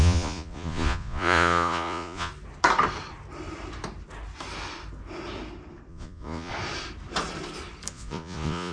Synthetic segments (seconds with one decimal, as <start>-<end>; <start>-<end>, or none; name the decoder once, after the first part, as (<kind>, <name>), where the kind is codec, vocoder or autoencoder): 0.0-2.3 (vocoder, Vocos); 5.9-6.5; 7.9-8.7